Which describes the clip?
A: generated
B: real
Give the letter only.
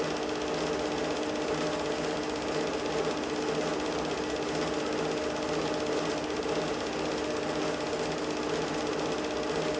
B